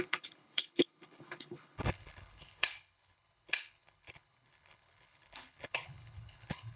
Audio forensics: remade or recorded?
remade